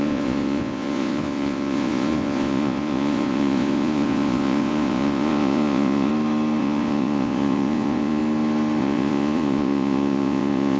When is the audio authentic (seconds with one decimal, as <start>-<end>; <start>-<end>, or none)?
6.1-6.6; 8.2-8.8